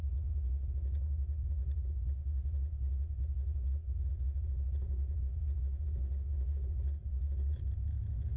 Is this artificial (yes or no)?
no